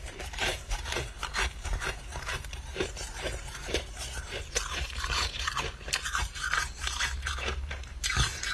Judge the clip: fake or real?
fake